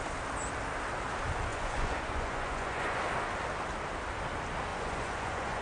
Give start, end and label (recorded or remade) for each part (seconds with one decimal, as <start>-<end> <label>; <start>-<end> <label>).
0.0-1.5 recorded; 1.5-3.0 remade; 3.0-4.7 recorded; 4.7-5.6 remade